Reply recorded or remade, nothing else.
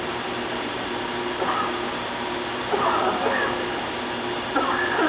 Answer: recorded